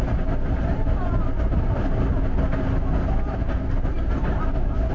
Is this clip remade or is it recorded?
recorded